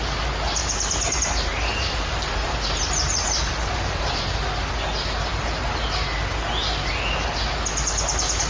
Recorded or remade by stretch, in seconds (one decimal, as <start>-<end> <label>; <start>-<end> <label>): 0.0-0.6 recorded; 0.6-4.5 remade; 4.5-8.5 recorded